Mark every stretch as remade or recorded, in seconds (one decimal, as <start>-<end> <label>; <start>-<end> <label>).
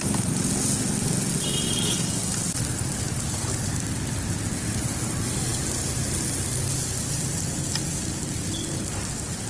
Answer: 0.0-9.5 recorded